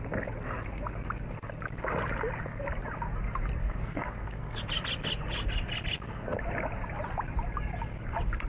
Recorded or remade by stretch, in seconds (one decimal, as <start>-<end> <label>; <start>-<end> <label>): 0.0-3.6 recorded; 3.6-4.6 remade; 4.6-8.5 recorded